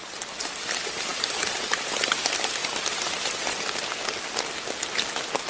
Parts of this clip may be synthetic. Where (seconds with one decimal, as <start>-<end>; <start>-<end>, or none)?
none

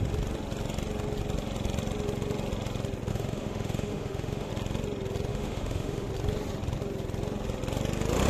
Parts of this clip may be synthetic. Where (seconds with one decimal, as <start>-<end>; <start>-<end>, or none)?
3.1-4.5; 5.3-6.1

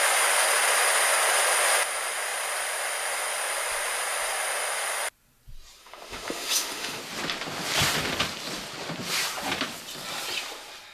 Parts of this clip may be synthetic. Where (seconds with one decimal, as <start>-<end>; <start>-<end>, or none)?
5.8-7.0

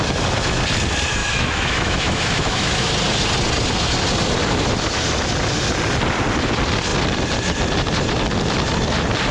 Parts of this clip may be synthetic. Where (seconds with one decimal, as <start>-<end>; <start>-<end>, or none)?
1.2-2.9